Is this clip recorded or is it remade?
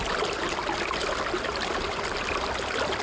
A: recorded